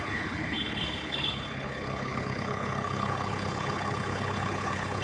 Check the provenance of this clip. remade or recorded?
remade